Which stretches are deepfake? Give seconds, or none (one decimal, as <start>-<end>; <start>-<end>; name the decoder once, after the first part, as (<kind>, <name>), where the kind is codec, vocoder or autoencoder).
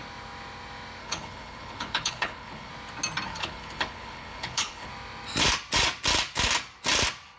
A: 1.0-2.7 (codec, HILCodec); 3.3-4.9